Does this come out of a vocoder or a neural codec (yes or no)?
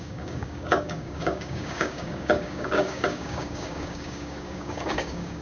yes